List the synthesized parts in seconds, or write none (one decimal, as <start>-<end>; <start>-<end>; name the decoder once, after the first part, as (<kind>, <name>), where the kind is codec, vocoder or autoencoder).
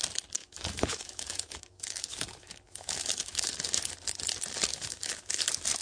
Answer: 0.4-3.9 (autoencoder, DAC-VAE); 4.7-5.3